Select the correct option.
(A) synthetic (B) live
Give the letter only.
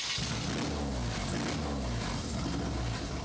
B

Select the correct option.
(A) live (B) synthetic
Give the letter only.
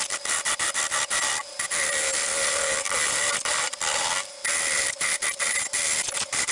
A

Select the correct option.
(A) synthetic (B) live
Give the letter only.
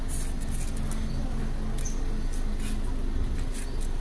B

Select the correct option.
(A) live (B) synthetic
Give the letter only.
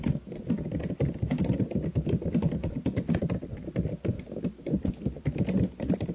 A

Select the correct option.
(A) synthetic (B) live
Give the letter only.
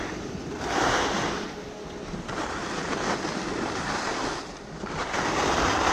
B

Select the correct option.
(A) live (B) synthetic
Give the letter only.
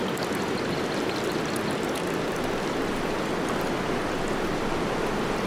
A